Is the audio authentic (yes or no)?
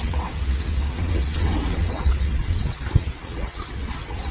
no